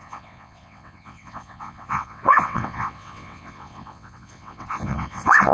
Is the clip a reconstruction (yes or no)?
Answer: yes